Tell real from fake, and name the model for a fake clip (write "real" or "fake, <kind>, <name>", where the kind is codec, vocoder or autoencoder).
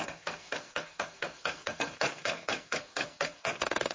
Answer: fake, codec, SNAC